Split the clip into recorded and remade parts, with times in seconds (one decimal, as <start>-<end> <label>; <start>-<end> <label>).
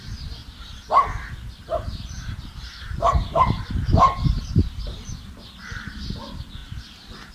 0.0-0.4 recorded; 0.4-4.8 remade; 4.8-5.6 recorded; 5.6-6.1 remade; 6.1-7.3 recorded